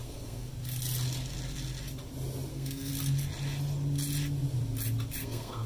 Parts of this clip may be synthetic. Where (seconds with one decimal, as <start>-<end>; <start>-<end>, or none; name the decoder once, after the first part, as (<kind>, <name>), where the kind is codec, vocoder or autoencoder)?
0.0-0.5 (codec, SNAC); 2.5-2.9; 5.2-5.7